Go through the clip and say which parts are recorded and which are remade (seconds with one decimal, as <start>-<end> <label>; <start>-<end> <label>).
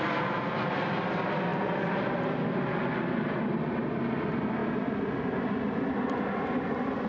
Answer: 0.0-7.1 recorded